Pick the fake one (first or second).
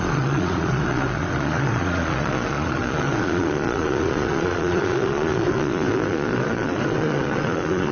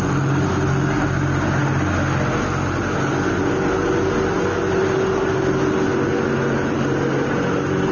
first